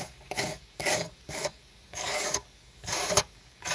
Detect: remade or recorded remade